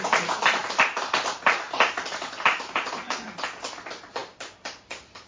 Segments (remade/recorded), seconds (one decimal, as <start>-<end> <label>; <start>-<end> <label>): 0.0-0.6 recorded; 0.6-2.9 remade; 2.9-5.3 recorded